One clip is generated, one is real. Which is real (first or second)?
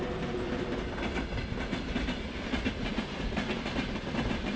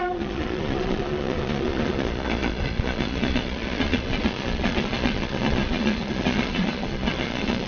first